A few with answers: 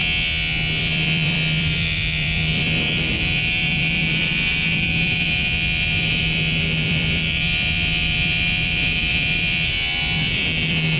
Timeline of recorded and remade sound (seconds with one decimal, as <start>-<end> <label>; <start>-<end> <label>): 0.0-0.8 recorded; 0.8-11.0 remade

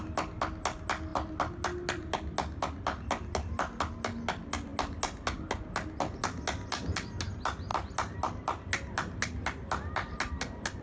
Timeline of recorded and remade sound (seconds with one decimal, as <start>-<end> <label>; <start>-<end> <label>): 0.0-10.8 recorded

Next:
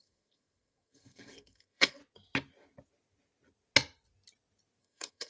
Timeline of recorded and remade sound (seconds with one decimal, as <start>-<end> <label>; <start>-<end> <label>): 0.0-2.0 remade; 2.0-4.8 recorded; 4.8-5.3 remade

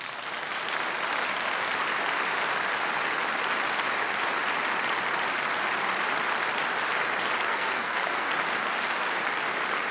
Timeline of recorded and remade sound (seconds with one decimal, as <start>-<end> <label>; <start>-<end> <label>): 0.0-7.4 recorded; 7.4-8.3 remade; 8.3-9.9 recorded

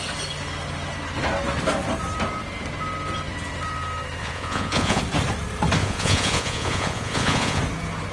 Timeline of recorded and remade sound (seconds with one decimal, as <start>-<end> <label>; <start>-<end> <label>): 0.0-4.2 recorded; 4.2-5.0 remade; 5.0-5.8 recorded; 5.8-7.6 remade; 7.6-8.1 recorded

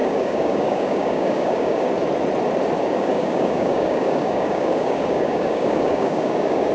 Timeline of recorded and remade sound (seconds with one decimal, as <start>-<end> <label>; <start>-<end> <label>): 0.0-1.9 remade; 1.9-2.8 recorded; 2.8-6.7 remade